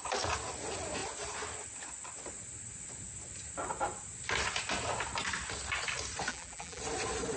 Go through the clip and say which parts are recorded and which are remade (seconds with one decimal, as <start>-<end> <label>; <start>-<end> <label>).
0.0-6.3 recorded; 6.3-6.8 remade; 6.8-7.4 recorded